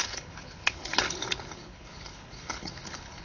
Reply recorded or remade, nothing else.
remade